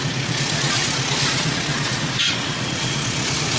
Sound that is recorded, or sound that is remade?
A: remade